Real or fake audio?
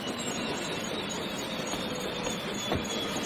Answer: fake